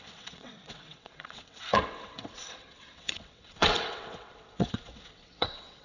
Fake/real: fake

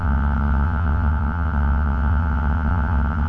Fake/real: fake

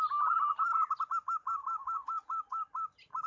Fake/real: real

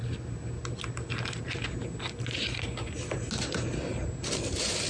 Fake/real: real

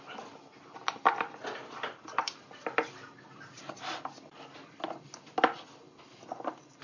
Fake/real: real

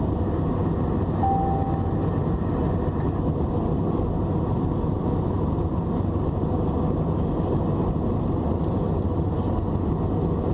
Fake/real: real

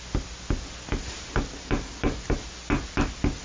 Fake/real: real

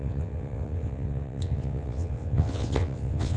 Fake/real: fake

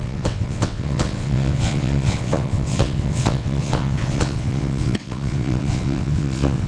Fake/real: fake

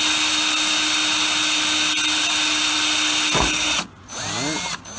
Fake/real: real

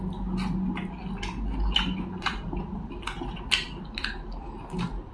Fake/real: real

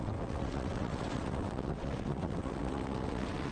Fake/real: fake